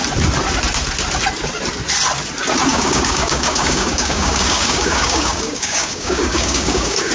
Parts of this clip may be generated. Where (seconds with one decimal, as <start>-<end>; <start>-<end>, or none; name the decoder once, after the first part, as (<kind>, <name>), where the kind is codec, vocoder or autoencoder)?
2.7-7.1 (codec, DAC)